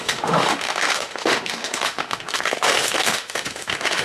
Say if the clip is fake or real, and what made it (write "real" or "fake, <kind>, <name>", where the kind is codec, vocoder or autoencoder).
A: fake, autoencoder, DAC-VAE